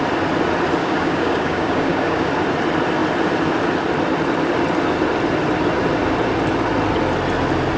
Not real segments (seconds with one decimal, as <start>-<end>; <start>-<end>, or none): 0.8-2.3